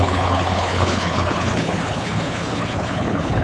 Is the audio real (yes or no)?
no